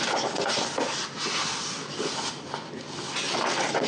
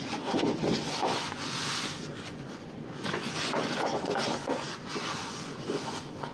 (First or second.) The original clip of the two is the first